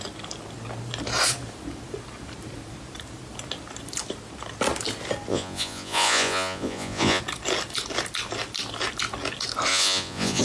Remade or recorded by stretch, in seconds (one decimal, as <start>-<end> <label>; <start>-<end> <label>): 0.0-5.3 recorded; 5.3-7.2 remade; 7.2-9.7 recorded; 9.7-10.4 remade